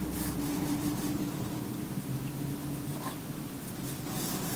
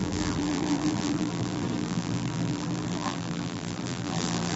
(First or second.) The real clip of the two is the first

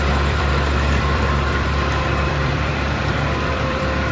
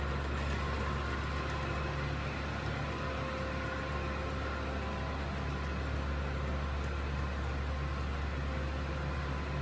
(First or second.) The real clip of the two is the second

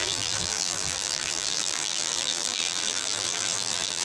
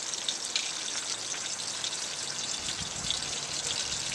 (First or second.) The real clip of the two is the second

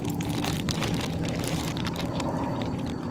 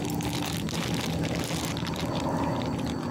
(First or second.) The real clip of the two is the second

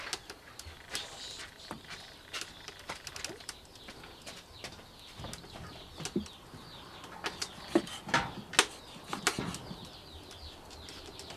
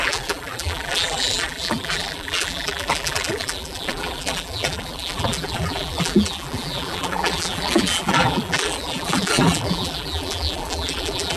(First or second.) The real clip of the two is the first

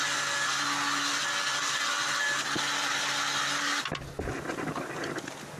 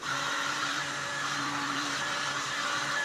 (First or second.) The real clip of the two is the first